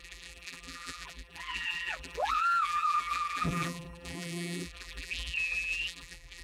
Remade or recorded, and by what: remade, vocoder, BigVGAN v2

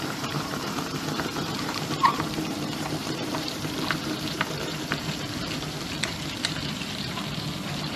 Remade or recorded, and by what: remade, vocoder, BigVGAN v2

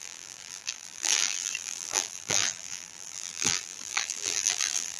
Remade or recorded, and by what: remade, vocoder, BigVGAN v2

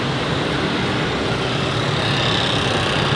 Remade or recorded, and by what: recorded